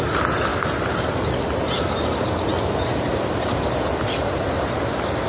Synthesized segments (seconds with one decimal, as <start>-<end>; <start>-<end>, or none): none